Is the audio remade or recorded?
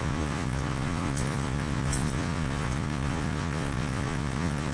remade